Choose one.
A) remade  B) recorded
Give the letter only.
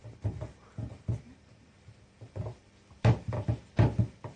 A